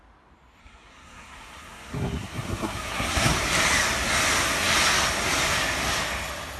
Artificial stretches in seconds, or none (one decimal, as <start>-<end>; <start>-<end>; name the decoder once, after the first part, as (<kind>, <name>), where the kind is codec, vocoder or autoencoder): 0.6-3.3 (codec, SNAC)